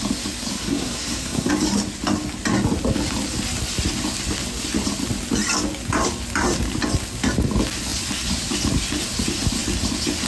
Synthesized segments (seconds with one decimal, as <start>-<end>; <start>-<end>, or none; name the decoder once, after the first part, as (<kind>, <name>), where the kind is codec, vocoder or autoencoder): 0.6-1.5 (codec, SNAC)